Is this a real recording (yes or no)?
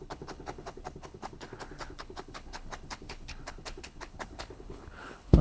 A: no